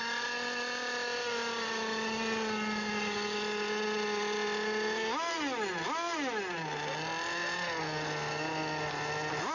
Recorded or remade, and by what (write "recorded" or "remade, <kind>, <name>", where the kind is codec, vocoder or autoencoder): recorded